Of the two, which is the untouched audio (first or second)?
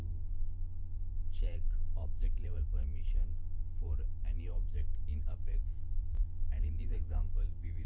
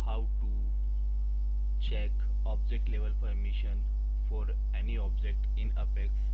second